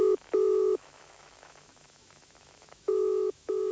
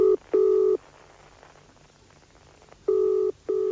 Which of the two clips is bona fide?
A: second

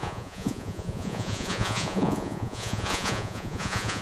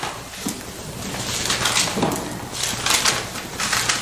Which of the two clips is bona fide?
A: second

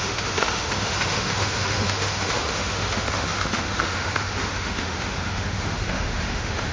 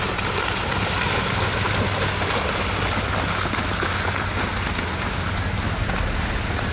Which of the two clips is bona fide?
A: second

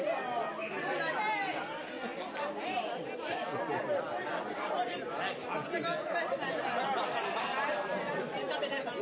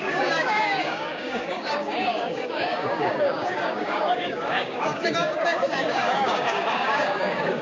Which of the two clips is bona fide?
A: first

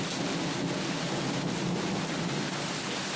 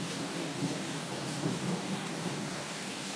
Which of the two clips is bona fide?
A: first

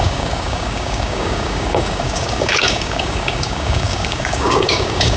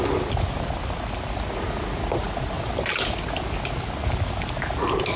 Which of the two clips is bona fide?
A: second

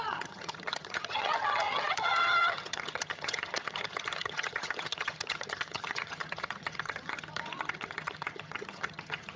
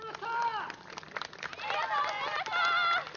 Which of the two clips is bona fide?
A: second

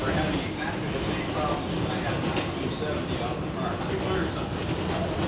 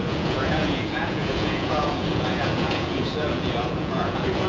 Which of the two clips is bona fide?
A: first